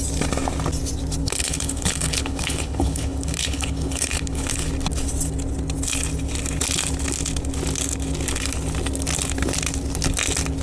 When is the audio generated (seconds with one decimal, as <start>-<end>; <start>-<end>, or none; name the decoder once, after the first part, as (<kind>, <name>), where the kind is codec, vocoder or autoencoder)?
1.2-4.7 (codec, HILCodec)